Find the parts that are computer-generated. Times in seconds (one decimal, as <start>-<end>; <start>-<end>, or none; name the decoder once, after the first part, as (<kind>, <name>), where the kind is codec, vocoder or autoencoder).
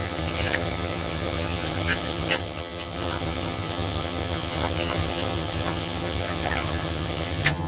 0.0-7.7 (vocoder, HiFi-GAN)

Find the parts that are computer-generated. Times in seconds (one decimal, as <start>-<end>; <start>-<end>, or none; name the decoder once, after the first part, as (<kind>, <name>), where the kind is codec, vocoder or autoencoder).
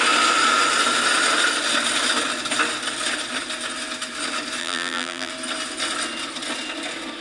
4.6-5.3 (vocoder, BigVGAN v2)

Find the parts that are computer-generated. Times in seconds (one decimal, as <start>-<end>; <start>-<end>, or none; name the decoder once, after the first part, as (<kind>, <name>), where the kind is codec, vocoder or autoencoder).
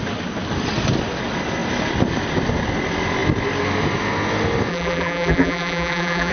4.7-6.3 (vocoder, BigVGAN v2)